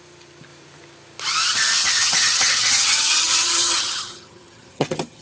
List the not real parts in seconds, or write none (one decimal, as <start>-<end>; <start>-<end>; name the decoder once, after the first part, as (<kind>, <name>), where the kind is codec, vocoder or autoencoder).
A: 1.8-5.2 (vocoder, HiFi-GAN)